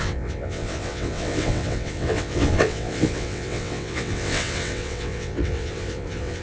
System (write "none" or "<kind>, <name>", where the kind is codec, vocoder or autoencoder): vocoder, WaveNeXt